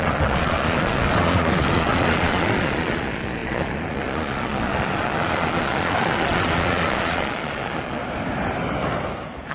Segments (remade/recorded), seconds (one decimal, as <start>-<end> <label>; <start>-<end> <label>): 0.0-8.0 remade; 8.0-9.5 recorded